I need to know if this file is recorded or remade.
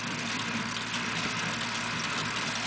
recorded